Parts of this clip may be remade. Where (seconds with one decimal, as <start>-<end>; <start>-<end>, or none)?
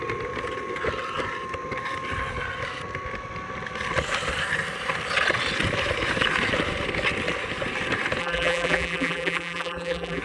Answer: 8.2-10.2